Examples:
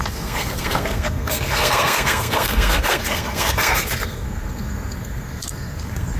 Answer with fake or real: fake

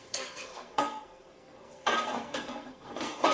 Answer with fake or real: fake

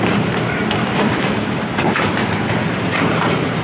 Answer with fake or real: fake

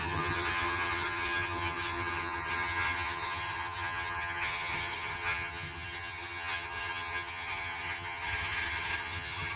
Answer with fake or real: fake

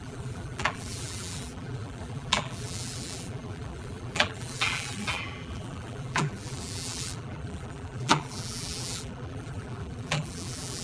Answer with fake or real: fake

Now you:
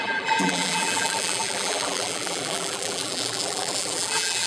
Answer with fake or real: fake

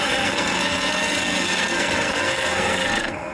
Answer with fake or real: fake